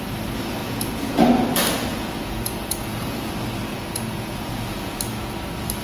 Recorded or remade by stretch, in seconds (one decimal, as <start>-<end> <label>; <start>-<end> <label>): 0.0-0.6 recorded; 0.6-1.1 remade; 1.1-1.9 recorded; 1.9-3.3 remade; 3.3-3.7 recorded; 3.7-5.0 remade; 5.0-5.8 recorded